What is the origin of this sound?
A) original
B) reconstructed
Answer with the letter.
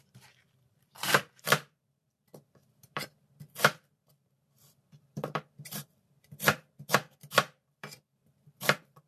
B